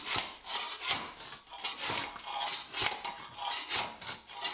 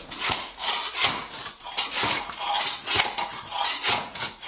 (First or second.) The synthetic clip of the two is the second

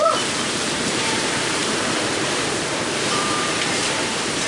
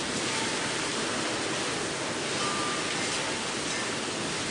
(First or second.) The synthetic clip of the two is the first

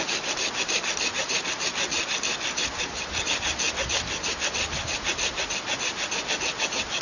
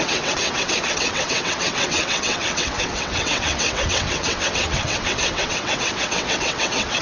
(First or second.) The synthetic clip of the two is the second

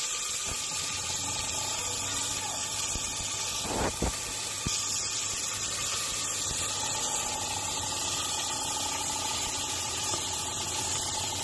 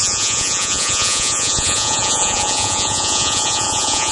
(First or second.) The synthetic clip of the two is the second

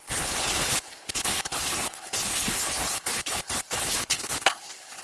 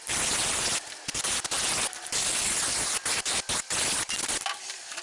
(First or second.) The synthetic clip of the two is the first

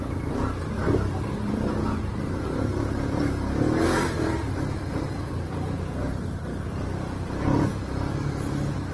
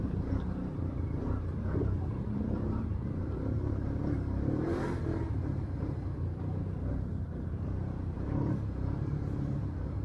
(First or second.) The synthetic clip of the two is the second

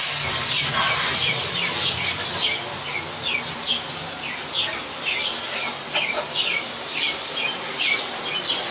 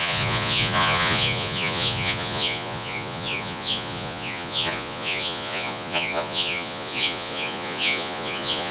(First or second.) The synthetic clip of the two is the second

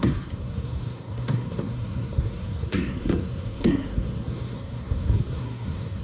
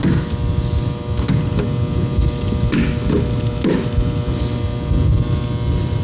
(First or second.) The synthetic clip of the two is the first